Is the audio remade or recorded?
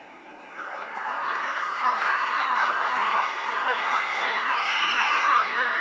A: remade